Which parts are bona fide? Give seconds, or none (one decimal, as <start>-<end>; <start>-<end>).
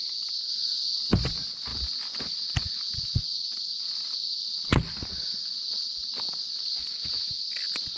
0.0-8.0